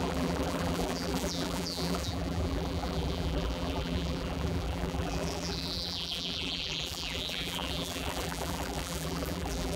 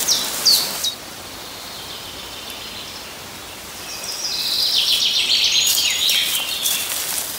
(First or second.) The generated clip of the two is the first